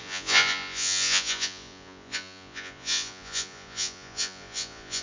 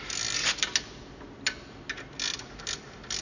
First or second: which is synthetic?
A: first